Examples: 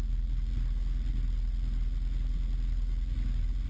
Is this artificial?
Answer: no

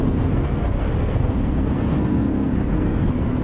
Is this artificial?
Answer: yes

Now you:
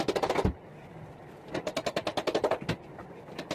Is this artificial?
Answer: no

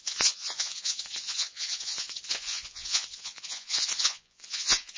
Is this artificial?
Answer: yes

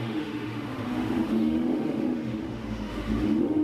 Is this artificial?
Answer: yes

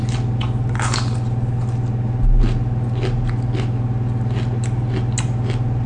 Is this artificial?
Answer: no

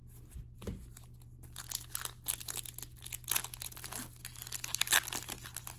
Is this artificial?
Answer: no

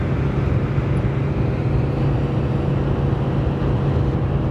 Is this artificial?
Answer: no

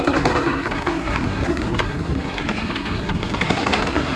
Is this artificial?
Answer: yes